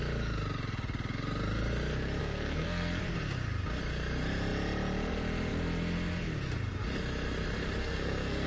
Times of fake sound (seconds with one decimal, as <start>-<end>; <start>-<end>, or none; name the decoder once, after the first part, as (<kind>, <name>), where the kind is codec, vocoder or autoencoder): 2.2-3.0 (codec, SNAC); 7.8-8.5